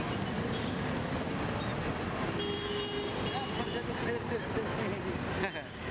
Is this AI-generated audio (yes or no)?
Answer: no